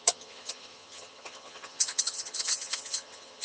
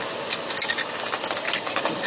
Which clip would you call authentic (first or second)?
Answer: second